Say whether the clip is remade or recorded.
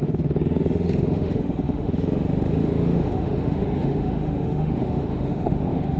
remade